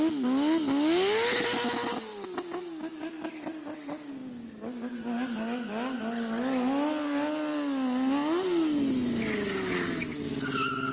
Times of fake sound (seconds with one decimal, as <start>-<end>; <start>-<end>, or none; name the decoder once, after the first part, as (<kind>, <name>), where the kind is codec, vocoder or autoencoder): none